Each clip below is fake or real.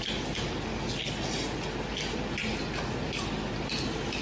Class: real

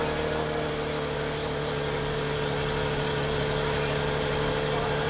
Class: real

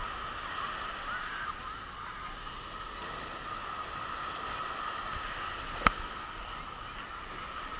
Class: real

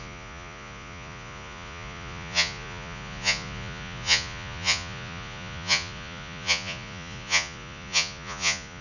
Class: fake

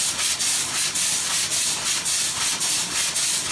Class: real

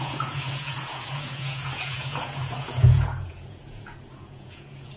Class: fake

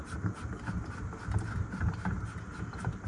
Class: real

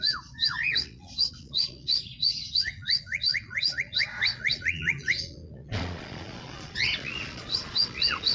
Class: fake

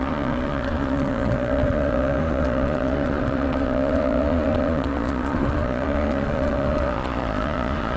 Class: fake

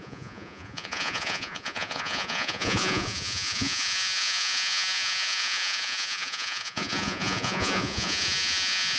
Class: fake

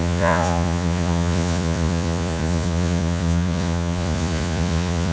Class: fake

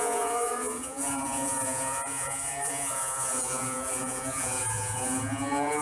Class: fake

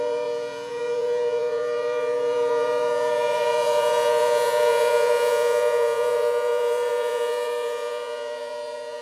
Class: fake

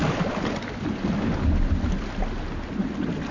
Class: real